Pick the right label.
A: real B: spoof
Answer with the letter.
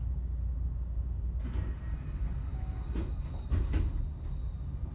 A